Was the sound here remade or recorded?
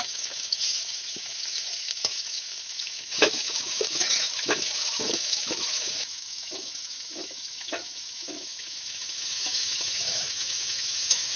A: remade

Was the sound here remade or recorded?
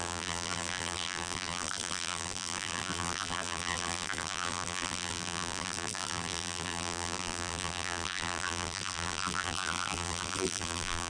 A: remade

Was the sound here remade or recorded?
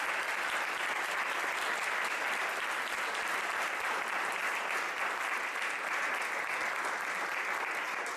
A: recorded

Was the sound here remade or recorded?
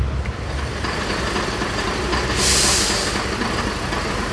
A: recorded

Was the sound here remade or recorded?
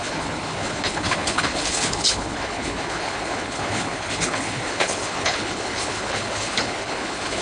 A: remade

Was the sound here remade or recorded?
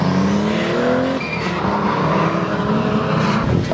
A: recorded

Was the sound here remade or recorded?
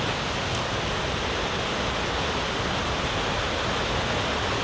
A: recorded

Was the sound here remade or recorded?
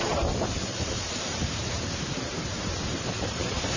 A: remade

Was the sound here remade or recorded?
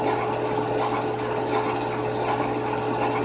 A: recorded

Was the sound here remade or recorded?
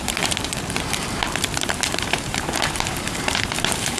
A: remade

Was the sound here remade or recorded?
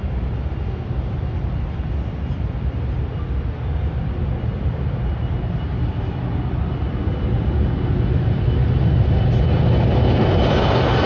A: recorded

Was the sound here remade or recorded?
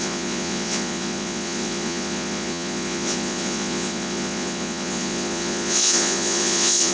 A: remade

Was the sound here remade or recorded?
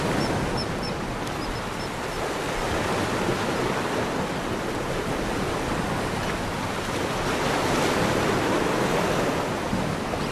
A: recorded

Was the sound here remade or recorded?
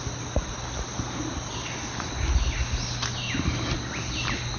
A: recorded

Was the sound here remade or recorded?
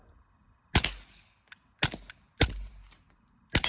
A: recorded